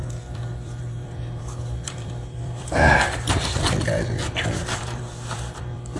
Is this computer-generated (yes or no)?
yes